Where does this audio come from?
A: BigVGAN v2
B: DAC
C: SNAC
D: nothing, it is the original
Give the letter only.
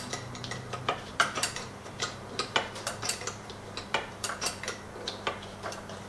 A